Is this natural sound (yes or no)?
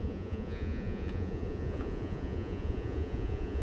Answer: no